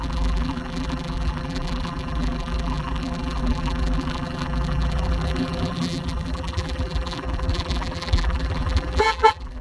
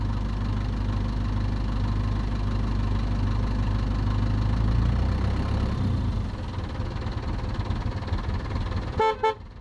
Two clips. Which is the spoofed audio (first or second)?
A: first